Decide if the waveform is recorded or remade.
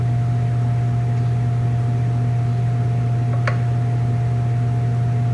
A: recorded